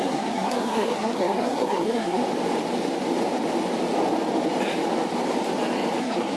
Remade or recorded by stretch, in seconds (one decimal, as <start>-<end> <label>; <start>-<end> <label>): 0.0-2.2 remade; 2.2-6.0 recorded; 6.0-6.4 remade